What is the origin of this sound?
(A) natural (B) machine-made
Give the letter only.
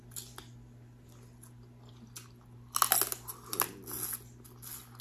A